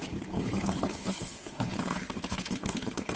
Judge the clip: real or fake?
fake